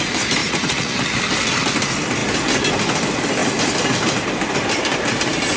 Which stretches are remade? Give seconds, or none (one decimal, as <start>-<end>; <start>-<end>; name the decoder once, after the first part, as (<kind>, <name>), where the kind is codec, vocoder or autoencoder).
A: 0.4-1.2 (vocoder, Vocos)